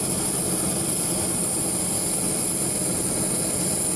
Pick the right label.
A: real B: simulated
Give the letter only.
A